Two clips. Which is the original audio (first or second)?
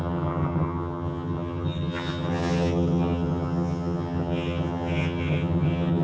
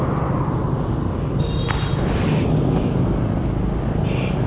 second